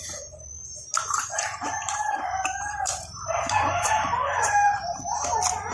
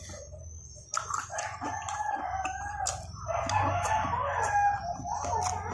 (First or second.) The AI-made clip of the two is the first